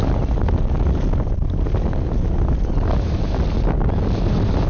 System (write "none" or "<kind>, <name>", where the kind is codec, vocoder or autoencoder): none